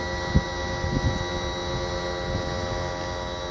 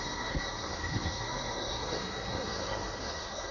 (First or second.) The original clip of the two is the first